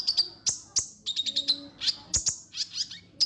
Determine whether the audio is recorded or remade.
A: recorded